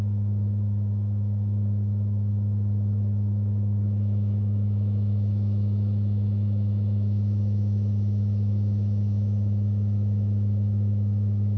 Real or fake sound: fake